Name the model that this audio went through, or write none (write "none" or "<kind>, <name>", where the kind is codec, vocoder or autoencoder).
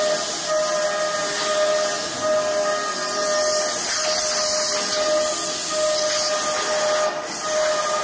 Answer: none